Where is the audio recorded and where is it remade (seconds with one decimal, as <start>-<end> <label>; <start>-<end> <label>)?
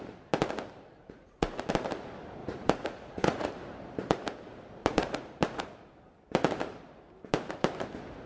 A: 0.0-1.0 recorded; 1.0-1.7 remade; 1.7-2.4 recorded; 2.4-3.5 remade; 3.5-4.8 recorded; 4.8-5.7 remade; 5.7-8.3 recorded